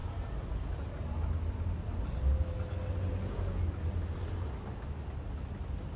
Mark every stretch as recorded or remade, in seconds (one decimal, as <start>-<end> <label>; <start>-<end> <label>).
0.0-6.0 recorded